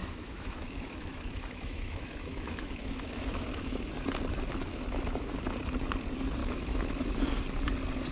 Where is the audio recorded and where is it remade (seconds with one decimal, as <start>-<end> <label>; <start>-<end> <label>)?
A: 0.0-3.9 remade; 3.9-4.7 recorded; 4.7-5.3 remade; 5.3-6.4 recorded; 6.4-7.2 remade; 7.2-8.1 recorded